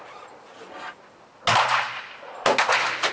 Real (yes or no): yes